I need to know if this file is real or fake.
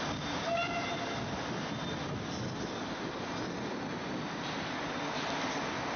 real